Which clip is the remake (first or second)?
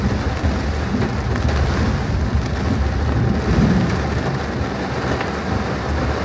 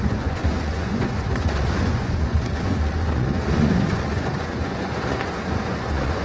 second